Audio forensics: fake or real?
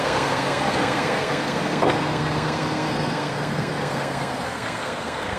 fake